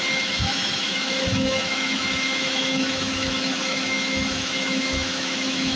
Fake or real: fake